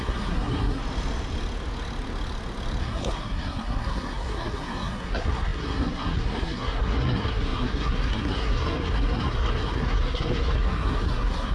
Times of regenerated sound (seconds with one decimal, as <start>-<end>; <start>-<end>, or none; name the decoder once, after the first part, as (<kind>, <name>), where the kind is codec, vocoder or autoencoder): 0.0-0.8 (codec, SNAC); 2.8-11.5